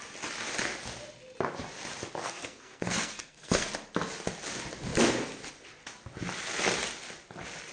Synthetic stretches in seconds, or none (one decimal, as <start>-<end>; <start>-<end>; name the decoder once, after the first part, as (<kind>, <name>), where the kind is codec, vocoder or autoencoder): 2.2-3.7 (codec, SNAC)